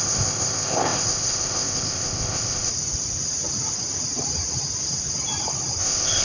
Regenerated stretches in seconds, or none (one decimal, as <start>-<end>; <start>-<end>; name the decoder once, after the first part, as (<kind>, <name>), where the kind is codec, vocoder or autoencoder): 0.0-2.7 (codec, ZipCodec); 5.8-6.2